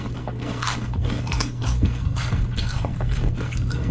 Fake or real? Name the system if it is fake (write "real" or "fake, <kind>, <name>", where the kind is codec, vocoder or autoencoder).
fake, codec, SNAC